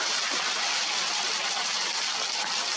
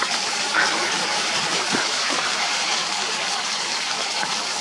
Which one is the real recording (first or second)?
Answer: first